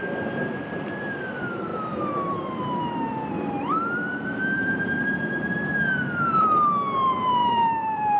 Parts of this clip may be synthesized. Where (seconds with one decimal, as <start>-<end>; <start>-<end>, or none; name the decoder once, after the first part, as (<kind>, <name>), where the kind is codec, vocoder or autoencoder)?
0.0-8.2 (vocoder, BigVGAN v2)